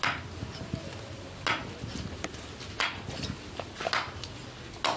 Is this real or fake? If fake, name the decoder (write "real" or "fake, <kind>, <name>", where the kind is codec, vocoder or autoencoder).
real